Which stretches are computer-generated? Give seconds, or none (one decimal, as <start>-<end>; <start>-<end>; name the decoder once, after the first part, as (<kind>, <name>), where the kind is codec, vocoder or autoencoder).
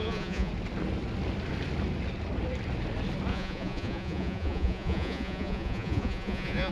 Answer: 0.0-0.5 (vocoder, Vocos); 3.3-6.7